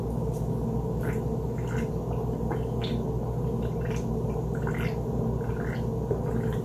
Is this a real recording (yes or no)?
yes